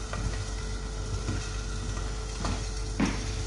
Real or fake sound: real